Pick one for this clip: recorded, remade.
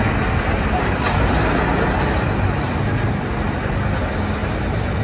recorded